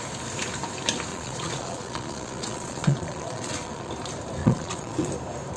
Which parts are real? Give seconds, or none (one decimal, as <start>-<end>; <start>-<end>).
0.0-1.1; 3.9-4.4; 5.1-5.6